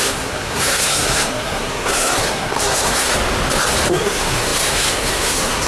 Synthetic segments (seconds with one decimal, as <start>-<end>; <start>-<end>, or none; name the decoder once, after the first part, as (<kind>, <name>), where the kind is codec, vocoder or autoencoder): 0.0-3.1 (codec, SNAC); 3.9-5.7